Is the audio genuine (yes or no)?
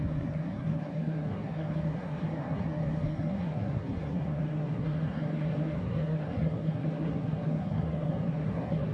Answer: no